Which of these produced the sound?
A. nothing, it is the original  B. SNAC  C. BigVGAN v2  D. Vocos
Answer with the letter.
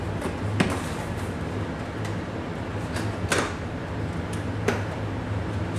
A